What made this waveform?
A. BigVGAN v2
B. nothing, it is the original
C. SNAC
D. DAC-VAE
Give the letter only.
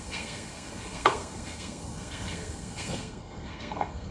C